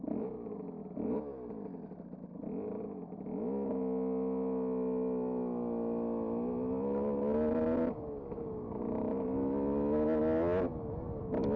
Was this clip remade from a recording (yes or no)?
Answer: no